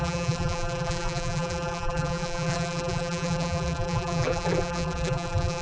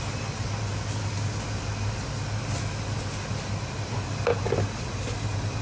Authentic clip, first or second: second